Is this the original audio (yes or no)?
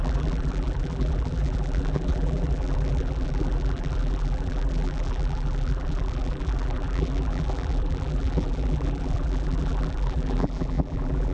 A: no